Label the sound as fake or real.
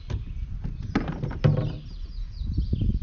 real